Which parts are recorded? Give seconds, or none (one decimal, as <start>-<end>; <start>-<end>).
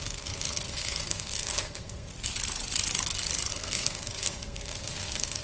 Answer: 2.1-3.5